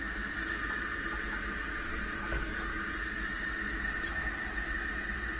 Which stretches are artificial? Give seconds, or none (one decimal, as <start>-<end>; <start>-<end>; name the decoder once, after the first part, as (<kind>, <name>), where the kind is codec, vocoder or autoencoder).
1.9-2.8 (codec, DAC)